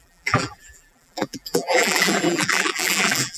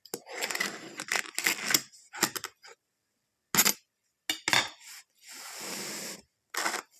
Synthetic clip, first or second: first